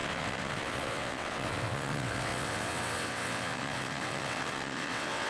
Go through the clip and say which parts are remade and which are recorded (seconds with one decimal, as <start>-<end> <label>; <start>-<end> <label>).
0.0-5.3 remade